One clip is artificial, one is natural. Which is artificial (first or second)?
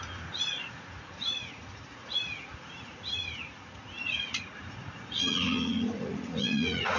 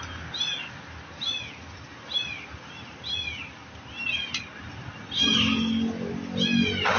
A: first